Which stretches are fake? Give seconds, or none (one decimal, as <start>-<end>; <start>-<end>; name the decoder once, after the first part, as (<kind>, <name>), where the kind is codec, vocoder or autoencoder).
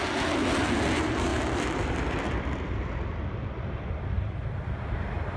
1.3-4.5 (vocoder, BigVGAN v2)